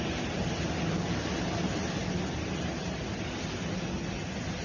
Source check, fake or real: real